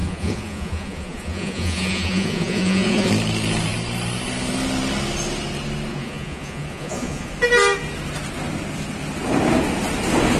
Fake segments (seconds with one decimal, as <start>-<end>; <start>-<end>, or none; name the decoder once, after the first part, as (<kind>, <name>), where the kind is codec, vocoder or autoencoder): 0.0-3.1 (vocoder, Vocos); 5.9-7.3